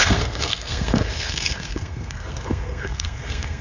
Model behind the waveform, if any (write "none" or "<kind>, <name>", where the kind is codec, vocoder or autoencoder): codec, SNAC